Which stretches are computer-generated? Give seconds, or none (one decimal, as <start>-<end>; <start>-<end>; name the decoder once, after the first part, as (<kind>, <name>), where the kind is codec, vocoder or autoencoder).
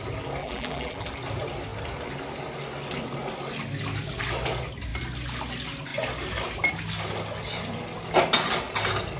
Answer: 0.4-1.1 (vocoder, BigVGAN v2)